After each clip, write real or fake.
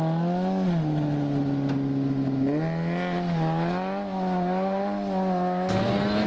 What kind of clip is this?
real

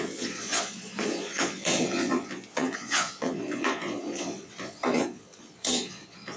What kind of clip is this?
fake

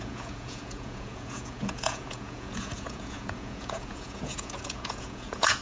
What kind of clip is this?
fake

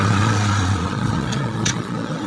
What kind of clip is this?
fake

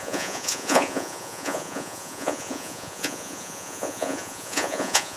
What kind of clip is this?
fake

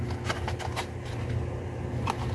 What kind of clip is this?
real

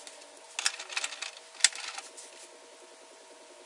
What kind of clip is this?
real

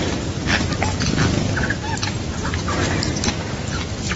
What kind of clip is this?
real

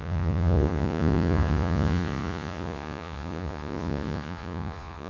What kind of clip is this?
fake